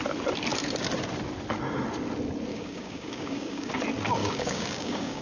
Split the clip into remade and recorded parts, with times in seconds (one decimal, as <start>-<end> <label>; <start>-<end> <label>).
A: 0.0-2.5 recorded; 2.5-3.7 remade; 3.7-4.2 recorded; 4.2-5.2 remade